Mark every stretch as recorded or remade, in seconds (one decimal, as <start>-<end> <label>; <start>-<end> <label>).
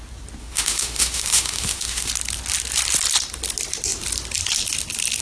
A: 0.0-0.4 recorded; 0.4-2.1 remade; 2.1-5.2 recorded